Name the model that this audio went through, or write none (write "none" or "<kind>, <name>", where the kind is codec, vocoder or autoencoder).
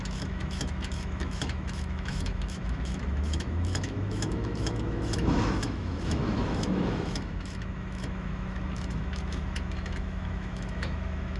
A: autoencoder, DAC-VAE